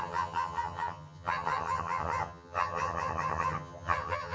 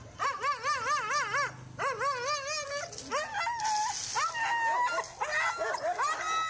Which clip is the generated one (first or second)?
first